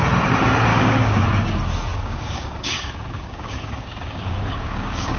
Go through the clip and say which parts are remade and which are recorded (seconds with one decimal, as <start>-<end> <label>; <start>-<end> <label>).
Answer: 0.0-0.7 recorded; 0.7-1.2 remade; 1.2-1.9 recorded; 1.9-5.2 remade